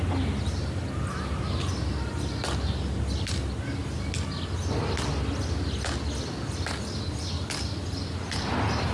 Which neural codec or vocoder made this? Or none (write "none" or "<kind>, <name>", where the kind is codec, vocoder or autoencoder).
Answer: none